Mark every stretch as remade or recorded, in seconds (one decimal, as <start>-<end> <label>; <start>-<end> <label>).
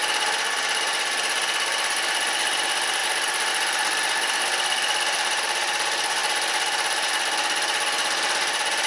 0.0-8.9 recorded